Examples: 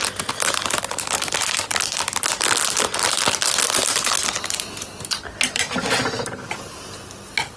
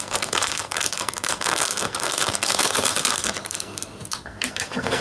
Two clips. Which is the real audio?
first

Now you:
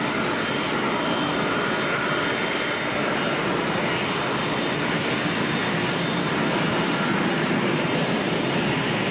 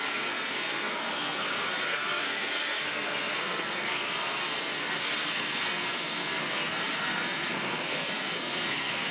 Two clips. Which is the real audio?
first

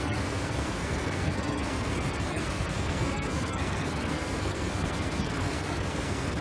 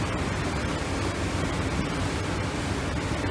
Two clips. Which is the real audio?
second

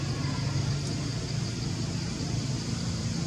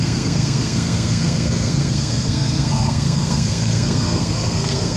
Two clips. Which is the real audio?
first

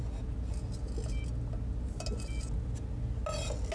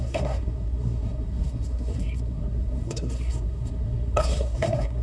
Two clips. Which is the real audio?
first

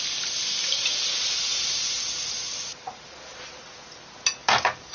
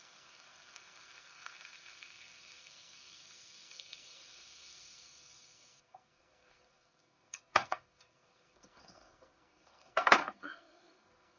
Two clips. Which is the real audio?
first